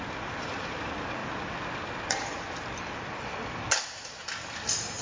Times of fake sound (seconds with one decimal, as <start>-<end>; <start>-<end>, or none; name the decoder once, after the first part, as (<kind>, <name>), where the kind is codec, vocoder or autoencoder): none